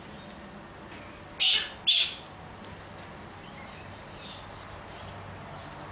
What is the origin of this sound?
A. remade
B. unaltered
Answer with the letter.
B